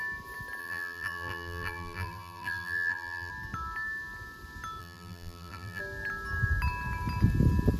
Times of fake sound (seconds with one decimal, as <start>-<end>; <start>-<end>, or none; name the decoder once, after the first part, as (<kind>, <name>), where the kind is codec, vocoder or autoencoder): 0.6-3.3 (vocoder, BigVGAN v2); 4.8-5.8